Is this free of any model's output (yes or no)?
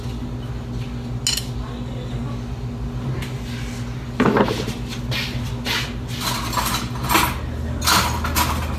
yes